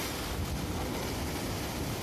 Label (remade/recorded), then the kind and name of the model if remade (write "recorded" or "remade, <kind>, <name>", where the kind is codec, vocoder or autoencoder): recorded